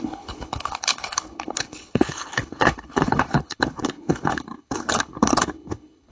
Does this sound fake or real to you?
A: fake